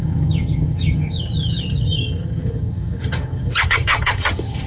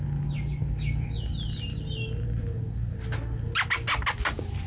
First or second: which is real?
second